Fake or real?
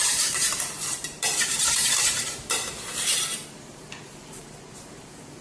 fake